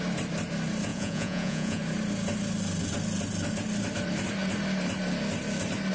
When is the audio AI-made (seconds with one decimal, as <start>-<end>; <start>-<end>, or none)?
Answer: 0.9-1.8